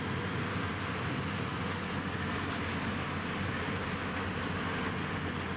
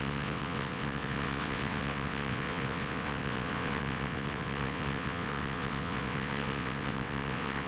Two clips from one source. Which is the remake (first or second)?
second